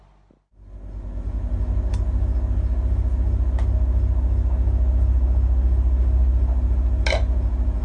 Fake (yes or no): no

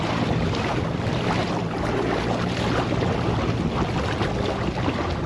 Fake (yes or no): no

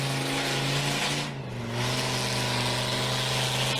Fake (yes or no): no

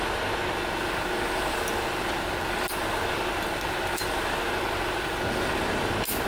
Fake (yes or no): no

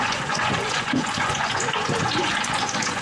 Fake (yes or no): yes